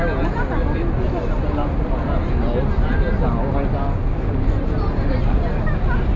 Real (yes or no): yes